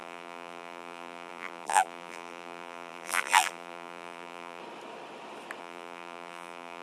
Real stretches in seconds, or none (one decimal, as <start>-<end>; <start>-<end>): 4.6-5.6